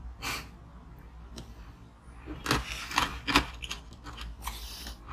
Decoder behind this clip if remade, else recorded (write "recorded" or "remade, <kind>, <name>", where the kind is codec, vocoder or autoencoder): recorded